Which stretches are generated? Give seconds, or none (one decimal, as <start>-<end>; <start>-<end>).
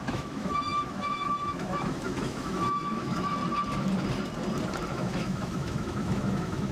0.0-3.4; 4.9-6.7